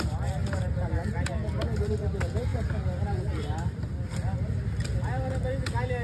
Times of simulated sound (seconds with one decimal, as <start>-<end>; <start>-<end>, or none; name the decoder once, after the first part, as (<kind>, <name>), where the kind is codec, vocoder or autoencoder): none